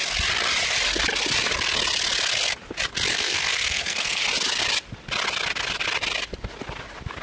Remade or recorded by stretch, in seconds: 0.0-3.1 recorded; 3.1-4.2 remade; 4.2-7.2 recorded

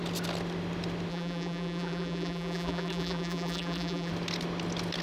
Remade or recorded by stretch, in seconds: 0.0-1.1 recorded; 1.1-4.1 remade; 4.1-5.0 recorded

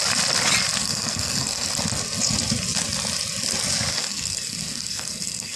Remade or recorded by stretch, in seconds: 0.0-0.8 recorded; 0.8-1.7 remade; 1.7-3.9 recorded; 3.9-5.6 remade

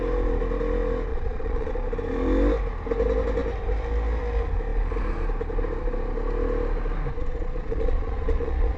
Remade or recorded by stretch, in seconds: 0.0-1.1 recorded; 1.1-1.7 remade; 1.7-7.1 recorded; 7.1-8.8 remade

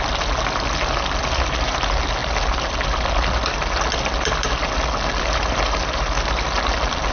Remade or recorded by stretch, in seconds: 0.0-7.1 recorded